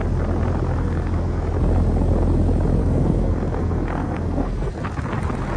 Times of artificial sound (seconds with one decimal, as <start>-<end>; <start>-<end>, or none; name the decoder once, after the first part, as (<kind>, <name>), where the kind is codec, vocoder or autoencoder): 0.8-1.4 (codec, SNAC); 2.8-4.7

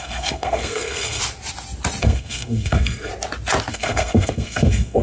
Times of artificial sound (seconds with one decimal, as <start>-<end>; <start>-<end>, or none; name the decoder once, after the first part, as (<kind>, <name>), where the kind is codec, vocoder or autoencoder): 0.0-1.2 (codec, SNAC); 2.0-3.1; 3.7-5.0

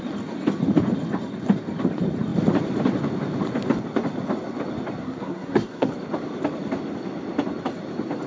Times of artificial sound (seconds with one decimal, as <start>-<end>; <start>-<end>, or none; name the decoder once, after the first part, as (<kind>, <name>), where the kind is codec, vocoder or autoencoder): 5.0-5.9 (codec, SNAC)